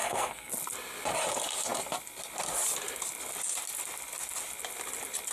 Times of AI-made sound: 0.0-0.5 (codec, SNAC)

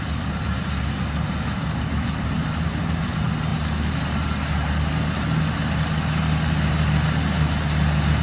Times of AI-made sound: none

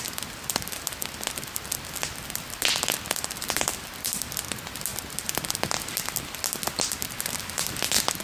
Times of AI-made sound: none

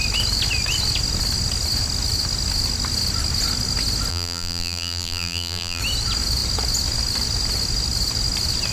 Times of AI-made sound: 4.1-5.8 (vocoder, BigVGAN v2)

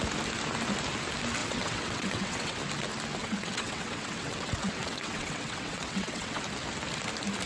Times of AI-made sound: 1.4-2.6 (vocoder, WaveNeXt); 3.2-6.4

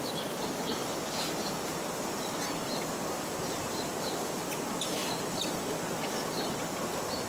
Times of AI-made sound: 3.9-4.5 (vocoder, BigVGAN v2); 5.0-5.7

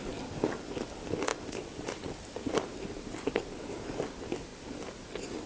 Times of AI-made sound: none

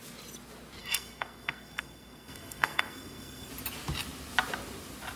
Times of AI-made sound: 0.8-3.5 (codec, SNAC)